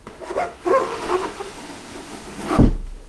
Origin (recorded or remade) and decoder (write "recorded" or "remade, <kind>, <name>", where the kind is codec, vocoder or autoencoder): remade, autoencoder, DAC-VAE